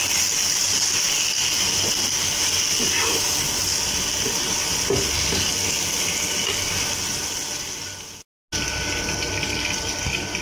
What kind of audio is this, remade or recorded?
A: recorded